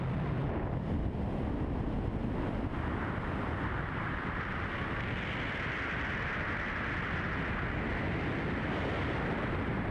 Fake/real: real